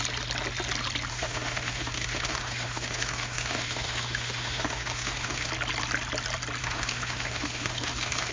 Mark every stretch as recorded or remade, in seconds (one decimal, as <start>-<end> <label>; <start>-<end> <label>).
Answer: 0.0-1.1 recorded; 1.1-5.5 remade; 5.5-6.6 recorded; 6.6-8.3 remade